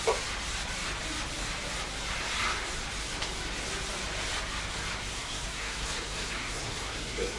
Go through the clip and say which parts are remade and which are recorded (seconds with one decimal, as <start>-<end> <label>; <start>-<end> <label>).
0.0-5.1 recorded; 5.1-7.4 remade